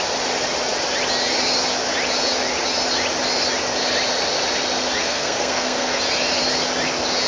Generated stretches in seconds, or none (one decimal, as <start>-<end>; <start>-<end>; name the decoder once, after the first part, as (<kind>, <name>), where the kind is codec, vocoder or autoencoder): 5.0-6.0 (codec, SNAC)